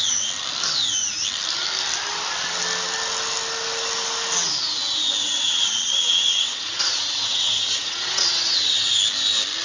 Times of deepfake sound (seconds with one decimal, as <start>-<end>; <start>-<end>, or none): 5.2-9.0